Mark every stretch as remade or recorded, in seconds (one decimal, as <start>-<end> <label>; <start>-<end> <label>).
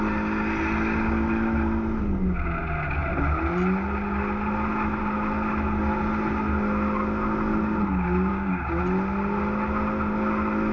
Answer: 0.0-8.3 recorded; 8.3-8.8 remade; 8.8-10.7 recorded